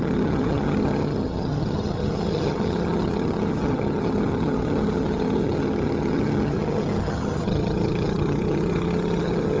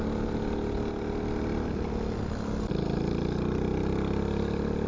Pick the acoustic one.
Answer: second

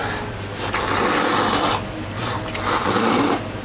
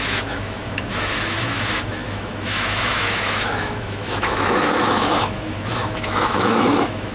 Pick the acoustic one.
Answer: first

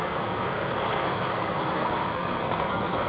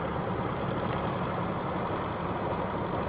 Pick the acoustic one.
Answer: second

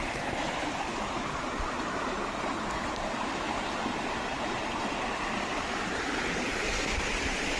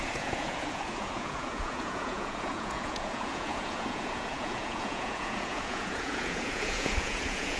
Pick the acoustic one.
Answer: first